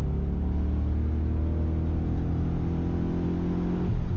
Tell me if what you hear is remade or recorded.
recorded